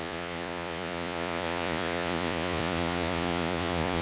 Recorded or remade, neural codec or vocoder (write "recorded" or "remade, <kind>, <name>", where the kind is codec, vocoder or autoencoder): remade, vocoder, Vocos